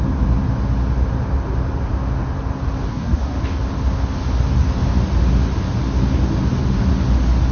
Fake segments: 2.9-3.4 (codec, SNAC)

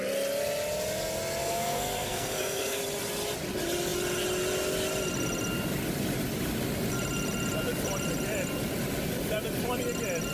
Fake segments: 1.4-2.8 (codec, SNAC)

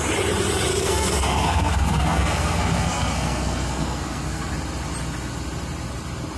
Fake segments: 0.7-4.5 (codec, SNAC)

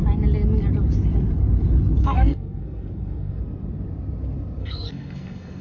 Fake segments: 2.0-3.4 (codec, SNAC); 4.6-5.6

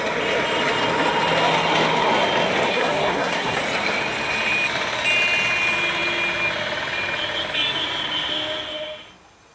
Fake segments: 2.7-3.6 (codec, SNAC)